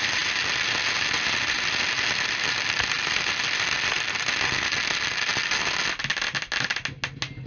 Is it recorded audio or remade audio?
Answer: recorded